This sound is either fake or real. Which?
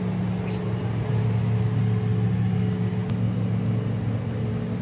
real